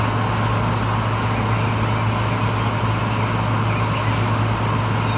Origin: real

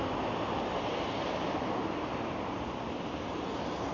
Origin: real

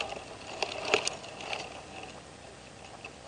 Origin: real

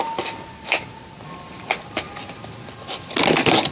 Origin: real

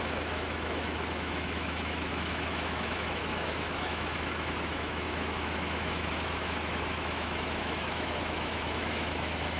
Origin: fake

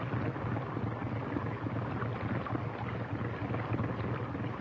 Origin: real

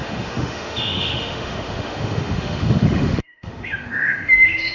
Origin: fake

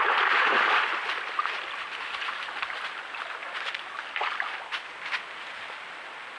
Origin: real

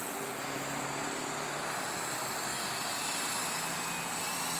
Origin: real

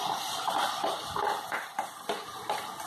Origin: real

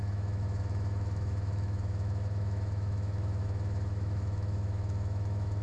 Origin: fake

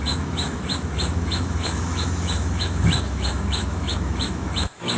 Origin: fake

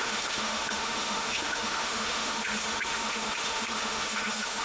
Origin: fake